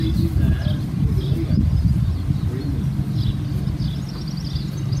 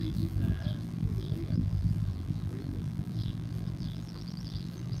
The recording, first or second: first